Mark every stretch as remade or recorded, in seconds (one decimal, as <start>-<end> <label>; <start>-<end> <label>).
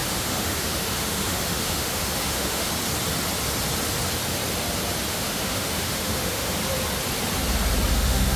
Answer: 0.0-2.7 remade; 2.7-5.1 recorded; 5.1-6.6 remade; 6.6-7.9 recorded; 7.9-8.4 remade